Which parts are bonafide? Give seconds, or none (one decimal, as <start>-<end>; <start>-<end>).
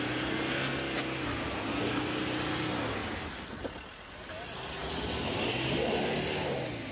0.0-6.9